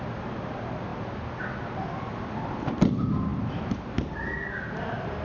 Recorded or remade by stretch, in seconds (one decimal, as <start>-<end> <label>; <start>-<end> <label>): 0.0-5.2 recorded